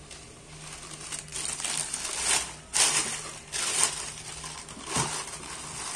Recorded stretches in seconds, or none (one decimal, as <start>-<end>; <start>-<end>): 0.0-6.0